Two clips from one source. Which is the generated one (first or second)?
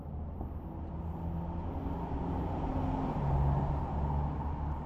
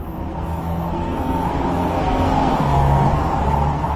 second